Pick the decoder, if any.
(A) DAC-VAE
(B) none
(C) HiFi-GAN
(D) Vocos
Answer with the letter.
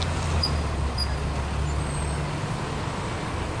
B